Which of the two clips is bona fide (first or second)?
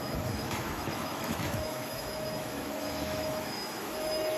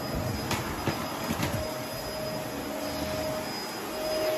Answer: second